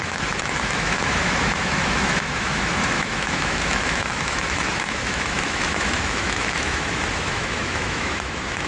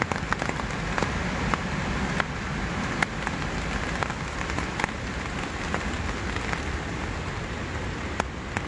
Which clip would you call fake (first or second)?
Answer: first